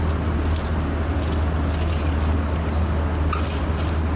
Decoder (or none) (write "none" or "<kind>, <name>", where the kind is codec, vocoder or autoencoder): none